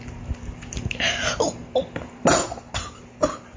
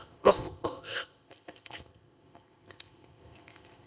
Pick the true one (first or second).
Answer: first